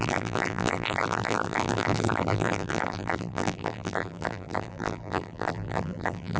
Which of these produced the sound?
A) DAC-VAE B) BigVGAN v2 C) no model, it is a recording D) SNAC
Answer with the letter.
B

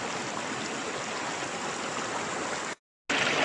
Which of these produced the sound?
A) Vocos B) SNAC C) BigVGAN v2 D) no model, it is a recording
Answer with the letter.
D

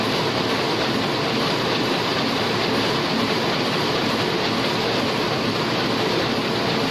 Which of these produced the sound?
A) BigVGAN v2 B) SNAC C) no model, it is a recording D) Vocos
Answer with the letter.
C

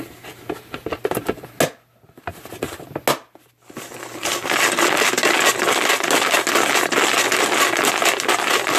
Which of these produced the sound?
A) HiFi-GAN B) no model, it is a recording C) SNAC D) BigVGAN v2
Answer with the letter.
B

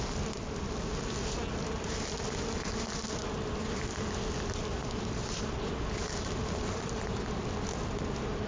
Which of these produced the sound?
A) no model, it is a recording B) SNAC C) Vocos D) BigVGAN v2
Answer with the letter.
A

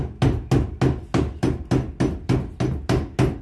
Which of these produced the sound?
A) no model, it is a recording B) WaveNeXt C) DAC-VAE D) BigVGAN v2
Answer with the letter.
A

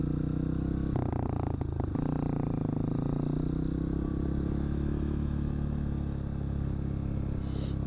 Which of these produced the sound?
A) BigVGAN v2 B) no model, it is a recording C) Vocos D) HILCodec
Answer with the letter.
B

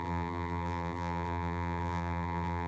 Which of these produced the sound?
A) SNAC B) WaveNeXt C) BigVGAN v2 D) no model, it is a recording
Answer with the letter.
C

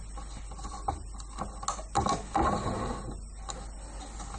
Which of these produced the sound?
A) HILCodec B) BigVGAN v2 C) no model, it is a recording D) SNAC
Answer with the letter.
C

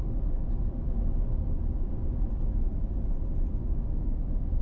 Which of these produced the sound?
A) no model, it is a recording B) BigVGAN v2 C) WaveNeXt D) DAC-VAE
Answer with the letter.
A